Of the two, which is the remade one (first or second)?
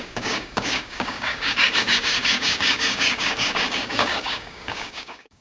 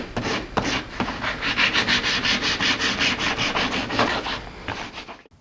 first